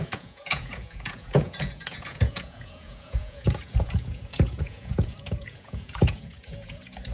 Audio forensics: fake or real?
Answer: fake